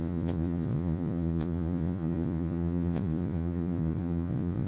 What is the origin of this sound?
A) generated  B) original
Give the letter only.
A